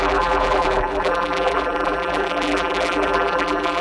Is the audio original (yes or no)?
no